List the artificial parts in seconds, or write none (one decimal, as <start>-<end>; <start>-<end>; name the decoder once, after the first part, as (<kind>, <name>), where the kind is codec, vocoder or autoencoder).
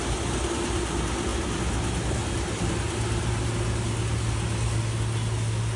none